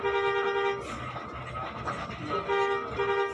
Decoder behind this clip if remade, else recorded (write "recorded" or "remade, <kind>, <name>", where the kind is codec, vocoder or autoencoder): recorded